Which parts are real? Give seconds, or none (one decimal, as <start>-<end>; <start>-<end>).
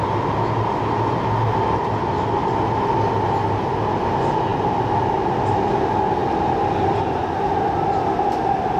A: 0.0-8.8